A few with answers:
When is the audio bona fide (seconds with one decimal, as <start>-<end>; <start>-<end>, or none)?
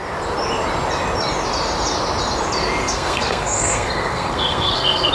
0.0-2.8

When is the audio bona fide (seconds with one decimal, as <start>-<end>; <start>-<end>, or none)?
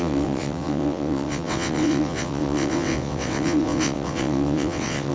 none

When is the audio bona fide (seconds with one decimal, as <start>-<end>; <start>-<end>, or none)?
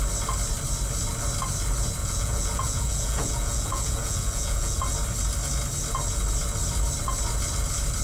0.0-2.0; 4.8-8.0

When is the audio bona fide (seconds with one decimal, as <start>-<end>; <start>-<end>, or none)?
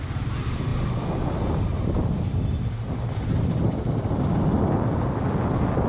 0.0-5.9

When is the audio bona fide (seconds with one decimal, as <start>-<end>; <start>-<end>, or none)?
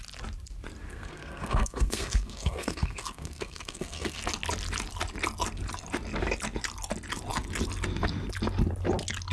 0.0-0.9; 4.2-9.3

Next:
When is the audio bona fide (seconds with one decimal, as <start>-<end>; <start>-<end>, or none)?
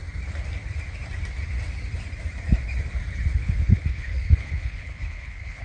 0.0-3.3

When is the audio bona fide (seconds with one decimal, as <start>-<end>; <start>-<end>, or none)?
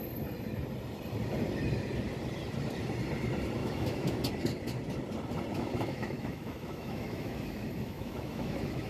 0.0-3.6; 4.2-5.5